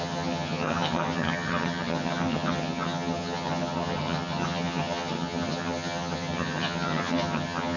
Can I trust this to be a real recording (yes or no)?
no